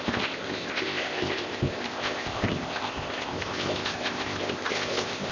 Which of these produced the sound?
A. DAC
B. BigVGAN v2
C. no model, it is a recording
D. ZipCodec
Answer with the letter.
D